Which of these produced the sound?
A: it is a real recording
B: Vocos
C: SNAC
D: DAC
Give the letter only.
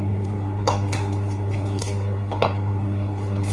C